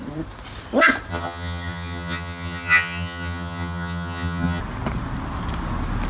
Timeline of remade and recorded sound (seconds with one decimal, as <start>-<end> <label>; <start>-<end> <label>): 0.0-1.1 recorded; 1.1-4.6 remade; 4.6-6.1 recorded